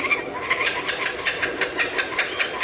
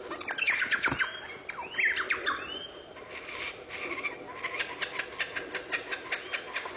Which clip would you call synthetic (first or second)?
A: first